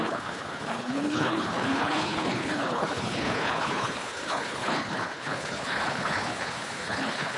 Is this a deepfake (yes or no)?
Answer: yes